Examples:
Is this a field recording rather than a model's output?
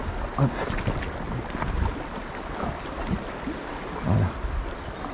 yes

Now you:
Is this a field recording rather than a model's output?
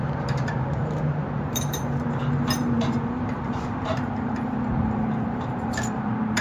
no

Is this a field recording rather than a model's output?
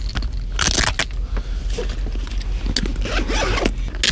yes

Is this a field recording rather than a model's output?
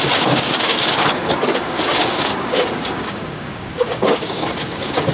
no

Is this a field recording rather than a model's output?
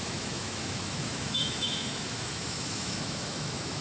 no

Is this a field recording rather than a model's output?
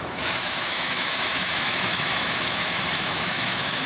no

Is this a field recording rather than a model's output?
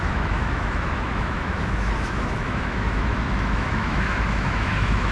no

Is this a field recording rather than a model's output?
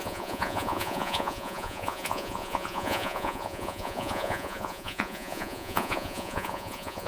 no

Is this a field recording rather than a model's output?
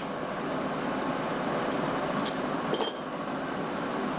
yes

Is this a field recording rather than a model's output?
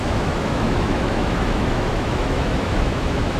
no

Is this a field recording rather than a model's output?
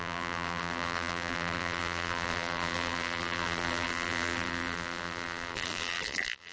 no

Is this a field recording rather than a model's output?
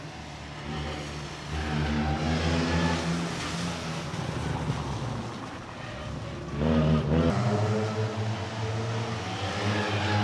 yes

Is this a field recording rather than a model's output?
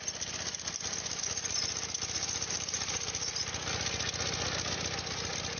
yes